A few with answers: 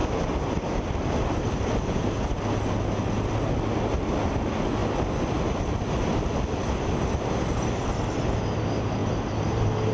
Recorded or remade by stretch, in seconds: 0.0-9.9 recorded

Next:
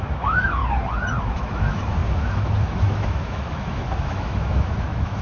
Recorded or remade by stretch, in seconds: 0.0-0.6 remade; 0.6-1.2 recorded; 1.2-5.2 remade

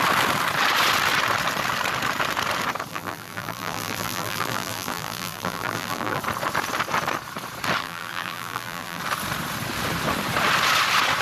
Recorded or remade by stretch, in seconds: 0.0-2.9 recorded; 2.9-6.2 remade; 6.2-7.8 recorded; 7.8-9.0 remade; 9.0-11.2 recorded

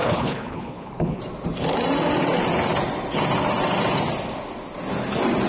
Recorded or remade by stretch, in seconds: 0.0-1.2 remade; 1.2-5.5 recorded

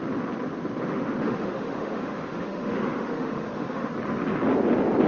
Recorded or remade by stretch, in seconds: 0.0-0.8 recorded; 0.8-3.9 remade; 3.9-5.1 recorded

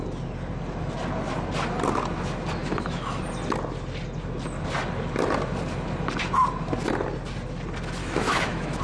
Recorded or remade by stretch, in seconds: 0.0-2.6 recorded; 2.6-3.2 remade; 3.2-8.0 recorded; 8.0-8.8 remade